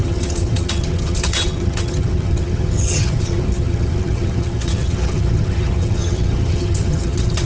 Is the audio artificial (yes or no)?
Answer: yes